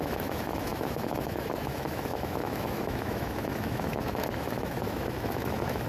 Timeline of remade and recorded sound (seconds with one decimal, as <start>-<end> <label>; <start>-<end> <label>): 0.0-5.9 remade